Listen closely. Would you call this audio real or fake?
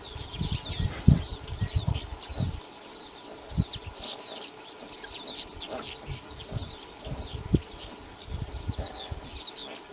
real